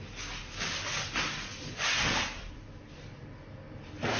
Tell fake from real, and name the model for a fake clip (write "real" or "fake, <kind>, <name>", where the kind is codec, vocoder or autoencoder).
real